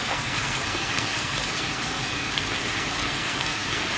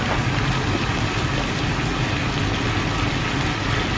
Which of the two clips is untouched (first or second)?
second